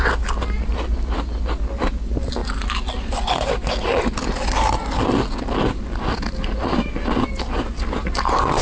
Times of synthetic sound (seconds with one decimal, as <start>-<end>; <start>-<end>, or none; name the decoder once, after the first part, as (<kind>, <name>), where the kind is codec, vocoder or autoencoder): none